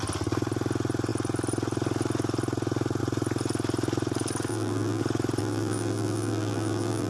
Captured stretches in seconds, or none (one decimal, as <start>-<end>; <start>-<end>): 0.0-4.5; 5.0-5.4

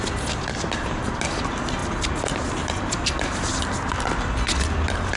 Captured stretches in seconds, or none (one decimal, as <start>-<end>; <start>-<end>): 0.0-5.2

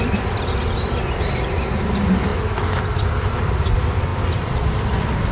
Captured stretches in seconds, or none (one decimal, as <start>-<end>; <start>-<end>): none

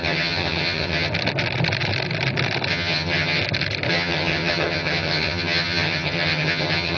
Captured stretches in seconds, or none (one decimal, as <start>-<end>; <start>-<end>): 1.1-2.7; 3.4-3.9

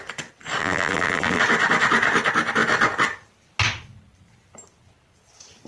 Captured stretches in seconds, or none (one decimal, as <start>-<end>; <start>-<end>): 0.0-0.6; 1.4-5.7

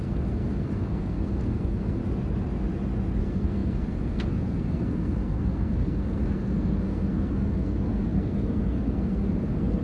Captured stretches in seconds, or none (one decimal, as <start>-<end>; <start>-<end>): 2.0-3.2

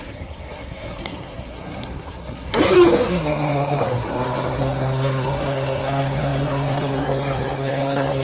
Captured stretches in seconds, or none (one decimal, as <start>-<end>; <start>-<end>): none

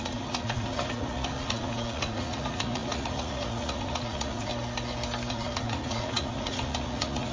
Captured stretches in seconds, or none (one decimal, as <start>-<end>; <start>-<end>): 4.5-5.3